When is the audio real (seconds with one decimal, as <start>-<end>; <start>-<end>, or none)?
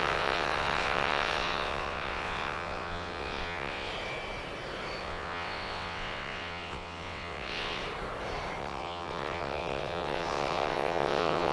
3.9-5.0; 7.8-8.6